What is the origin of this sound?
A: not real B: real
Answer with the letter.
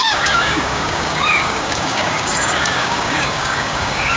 A